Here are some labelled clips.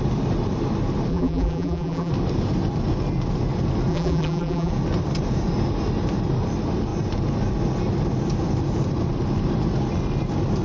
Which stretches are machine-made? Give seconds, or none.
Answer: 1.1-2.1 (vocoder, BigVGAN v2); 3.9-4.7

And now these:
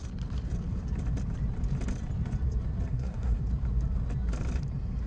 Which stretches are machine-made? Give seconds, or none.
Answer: 2.9-3.4 (codec, SNAC)